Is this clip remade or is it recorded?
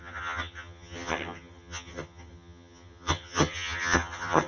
remade